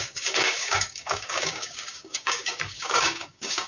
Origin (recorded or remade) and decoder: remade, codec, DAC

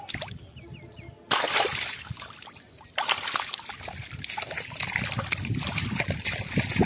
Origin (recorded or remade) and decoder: recorded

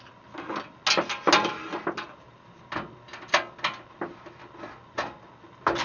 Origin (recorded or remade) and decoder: recorded